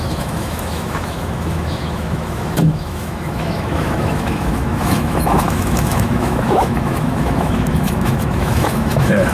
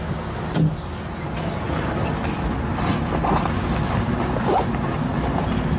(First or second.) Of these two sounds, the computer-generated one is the first